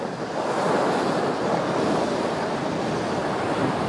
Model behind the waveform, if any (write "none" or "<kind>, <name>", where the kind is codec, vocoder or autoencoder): none